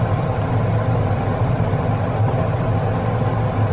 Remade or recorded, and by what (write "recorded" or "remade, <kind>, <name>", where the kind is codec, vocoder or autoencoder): recorded